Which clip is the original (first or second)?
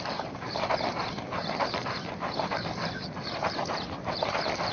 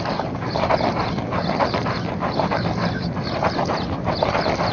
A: second